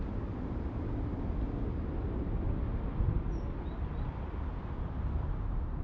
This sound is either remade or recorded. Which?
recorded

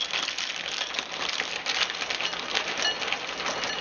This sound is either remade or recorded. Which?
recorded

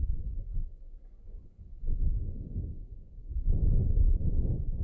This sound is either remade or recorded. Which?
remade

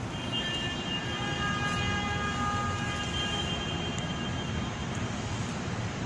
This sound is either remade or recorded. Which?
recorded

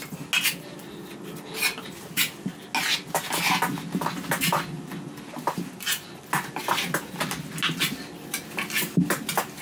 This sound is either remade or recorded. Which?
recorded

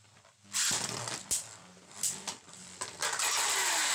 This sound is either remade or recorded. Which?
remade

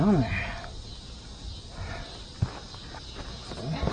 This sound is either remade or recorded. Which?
recorded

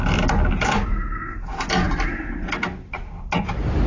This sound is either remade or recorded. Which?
recorded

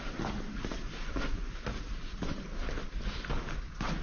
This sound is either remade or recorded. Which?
recorded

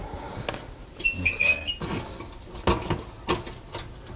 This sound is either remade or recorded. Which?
recorded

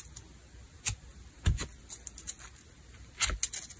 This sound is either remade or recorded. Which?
recorded